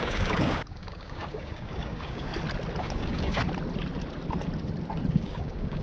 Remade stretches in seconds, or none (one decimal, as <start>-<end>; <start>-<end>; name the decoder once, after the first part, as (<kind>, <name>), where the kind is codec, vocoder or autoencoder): 0.0-2.3 (codec, DAC); 2.8-3.4; 5.1-5.8